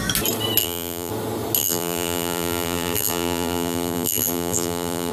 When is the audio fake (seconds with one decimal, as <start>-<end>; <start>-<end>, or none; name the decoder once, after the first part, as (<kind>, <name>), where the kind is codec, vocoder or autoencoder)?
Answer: 0.6-1.1 (vocoder, BigVGAN v2); 1.6-5.1